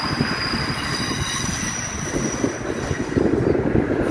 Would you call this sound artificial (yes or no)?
no